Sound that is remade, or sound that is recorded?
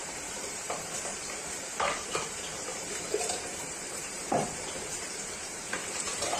remade